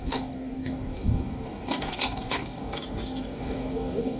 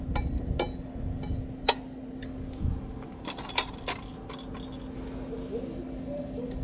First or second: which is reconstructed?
first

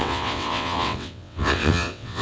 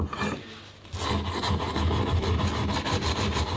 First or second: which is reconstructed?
first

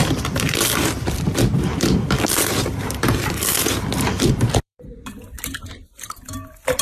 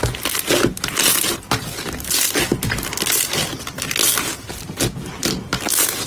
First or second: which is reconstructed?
first